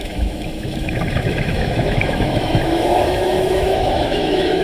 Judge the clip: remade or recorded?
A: remade